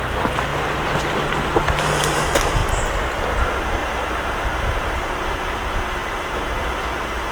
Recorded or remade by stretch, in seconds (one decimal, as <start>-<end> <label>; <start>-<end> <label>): 0.0-2.6 recorded; 2.6-3.4 remade; 3.4-3.8 recorded; 3.8-5.6 remade; 5.6-6.0 recorded; 6.0-7.3 remade